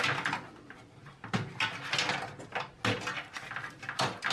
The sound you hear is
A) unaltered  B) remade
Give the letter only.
A